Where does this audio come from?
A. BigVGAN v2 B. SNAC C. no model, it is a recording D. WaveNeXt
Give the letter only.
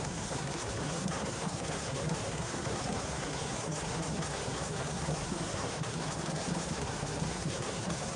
B